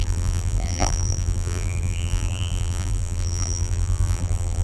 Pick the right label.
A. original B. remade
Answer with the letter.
B